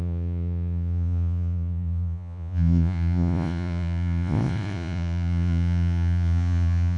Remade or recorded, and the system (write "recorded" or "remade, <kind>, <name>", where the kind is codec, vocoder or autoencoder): remade, vocoder, Vocos